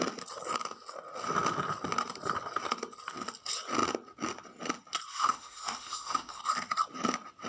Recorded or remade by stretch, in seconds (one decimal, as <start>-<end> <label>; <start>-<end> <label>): 0.0-5.1 recorded; 5.1-6.4 remade; 6.4-7.5 recorded